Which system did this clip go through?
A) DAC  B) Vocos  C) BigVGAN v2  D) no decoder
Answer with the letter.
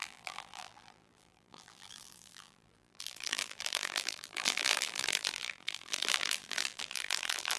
C